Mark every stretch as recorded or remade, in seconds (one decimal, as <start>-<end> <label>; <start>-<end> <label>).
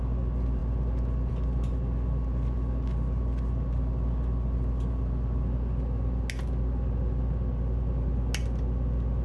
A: 0.0-9.2 recorded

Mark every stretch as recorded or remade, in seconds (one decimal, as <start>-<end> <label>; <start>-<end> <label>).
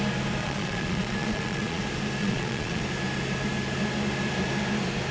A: 0.0-0.4 recorded; 0.4-1.8 remade; 1.8-2.2 recorded; 2.2-2.8 remade; 2.8-5.1 recorded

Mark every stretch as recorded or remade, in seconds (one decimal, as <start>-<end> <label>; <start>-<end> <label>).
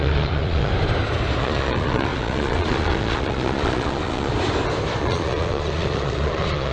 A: 0.0-0.7 remade; 0.7-1.4 recorded; 1.4-4.3 remade; 4.3-5.0 recorded; 5.0-6.7 remade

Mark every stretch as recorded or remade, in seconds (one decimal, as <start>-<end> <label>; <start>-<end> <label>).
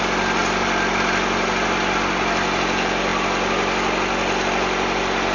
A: 0.0-5.3 recorded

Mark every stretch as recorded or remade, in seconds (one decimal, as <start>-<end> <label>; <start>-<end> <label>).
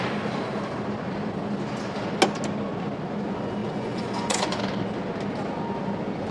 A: 0.0-3.6 recorded; 3.6-4.6 remade; 4.6-6.3 recorded